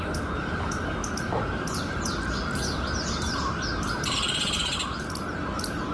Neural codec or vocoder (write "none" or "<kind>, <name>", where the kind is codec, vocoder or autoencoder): none